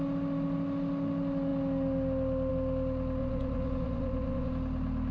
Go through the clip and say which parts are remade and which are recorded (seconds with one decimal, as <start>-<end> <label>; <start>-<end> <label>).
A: 0.0-3.2 recorded; 3.2-4.5 remade; 4.5-5.1 recorded